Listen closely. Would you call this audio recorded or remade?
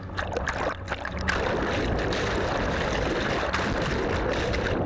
recorded